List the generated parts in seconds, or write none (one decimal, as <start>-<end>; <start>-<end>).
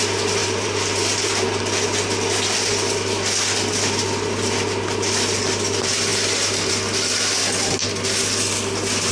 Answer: 0.4-1.6